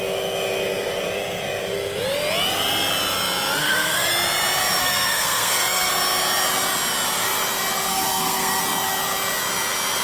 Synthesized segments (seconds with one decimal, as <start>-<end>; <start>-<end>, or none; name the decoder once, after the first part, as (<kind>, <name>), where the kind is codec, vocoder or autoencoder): 3.6-4.1 (codec, SNAC); 4.8-5.9; 7.9-8.6